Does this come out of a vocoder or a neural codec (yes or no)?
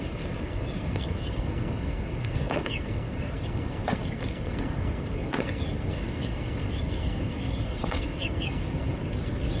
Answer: yes